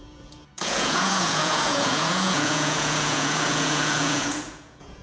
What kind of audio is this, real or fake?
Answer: fake